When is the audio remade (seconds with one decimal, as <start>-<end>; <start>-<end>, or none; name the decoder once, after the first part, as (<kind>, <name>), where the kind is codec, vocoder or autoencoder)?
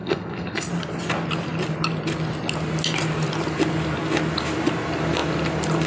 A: 0.0-0.7 (codec, SNAC)